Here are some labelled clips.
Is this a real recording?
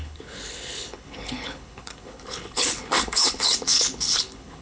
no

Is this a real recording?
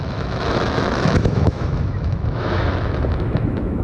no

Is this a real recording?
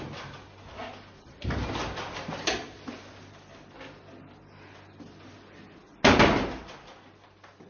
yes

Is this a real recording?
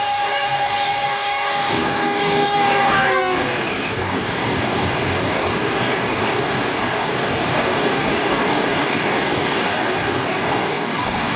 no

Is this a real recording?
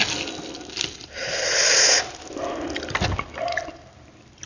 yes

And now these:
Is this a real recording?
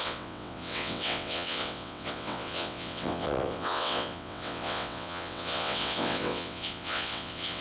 no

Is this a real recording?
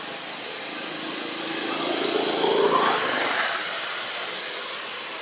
yes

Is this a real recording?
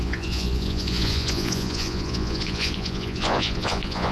no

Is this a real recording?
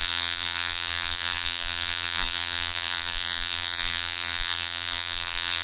no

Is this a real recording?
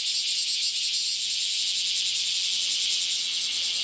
yes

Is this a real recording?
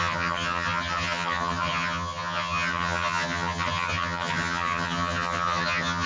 no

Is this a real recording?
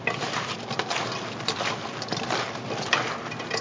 yes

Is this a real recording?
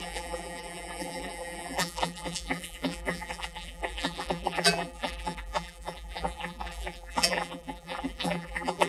no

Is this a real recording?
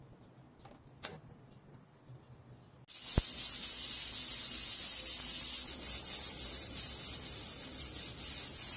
yes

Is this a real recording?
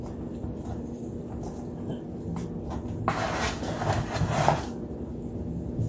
yes